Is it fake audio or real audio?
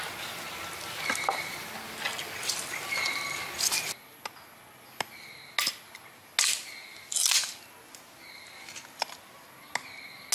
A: real